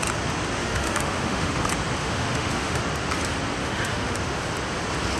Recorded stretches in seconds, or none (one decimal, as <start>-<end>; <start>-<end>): 0.0-0.6; 1.6-2.0; 2.8-3.6; 4.4-5.2